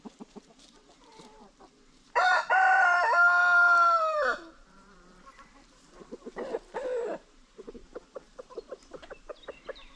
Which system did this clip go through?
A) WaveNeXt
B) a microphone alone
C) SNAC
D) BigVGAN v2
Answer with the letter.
D